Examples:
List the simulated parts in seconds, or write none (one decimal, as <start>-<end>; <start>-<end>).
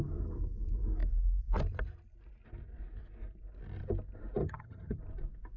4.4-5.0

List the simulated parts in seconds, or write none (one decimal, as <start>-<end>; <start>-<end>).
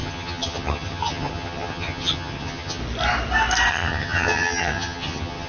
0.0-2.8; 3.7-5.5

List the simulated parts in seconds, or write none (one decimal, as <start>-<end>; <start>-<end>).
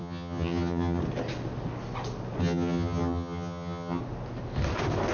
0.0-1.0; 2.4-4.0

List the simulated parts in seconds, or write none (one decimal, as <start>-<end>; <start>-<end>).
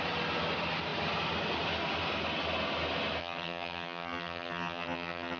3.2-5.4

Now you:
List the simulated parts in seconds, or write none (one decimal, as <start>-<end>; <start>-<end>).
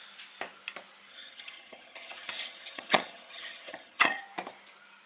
1.1-4.2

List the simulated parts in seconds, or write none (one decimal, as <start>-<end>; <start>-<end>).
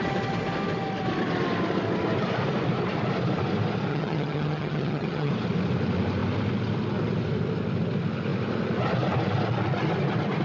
3.9-5.3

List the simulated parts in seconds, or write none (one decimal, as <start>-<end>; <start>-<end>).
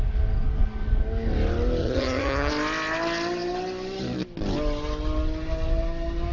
1.8-2.5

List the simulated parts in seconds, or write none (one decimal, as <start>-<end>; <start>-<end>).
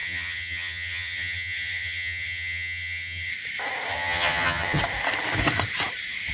0.0-3.3; 3.9-4.8